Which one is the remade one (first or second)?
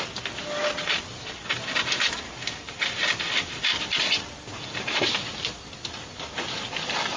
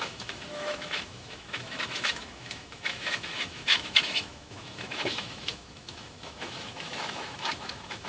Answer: second